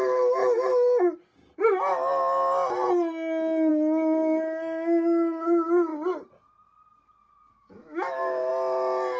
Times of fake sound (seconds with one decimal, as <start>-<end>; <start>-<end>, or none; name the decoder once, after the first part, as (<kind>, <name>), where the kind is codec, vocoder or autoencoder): 0.0-0.7 (autoencoder, DAC-VAE); 3.7-5.9; 7.5-8.5